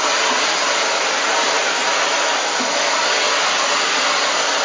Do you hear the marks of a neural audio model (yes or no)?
no